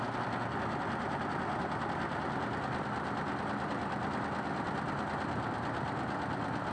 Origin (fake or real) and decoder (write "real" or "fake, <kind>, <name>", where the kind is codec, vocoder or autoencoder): real